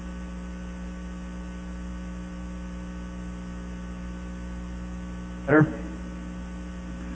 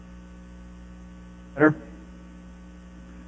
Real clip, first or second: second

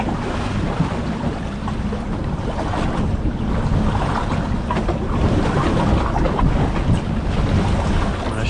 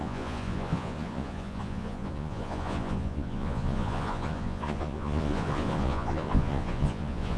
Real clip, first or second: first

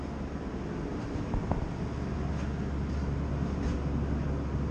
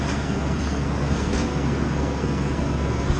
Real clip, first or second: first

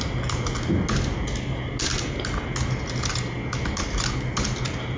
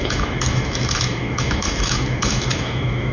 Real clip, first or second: first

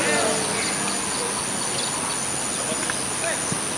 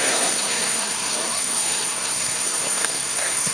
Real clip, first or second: first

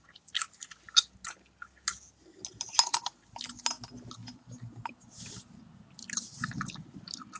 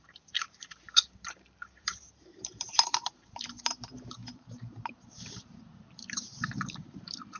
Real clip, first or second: first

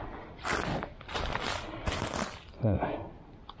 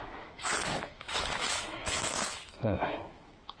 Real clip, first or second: first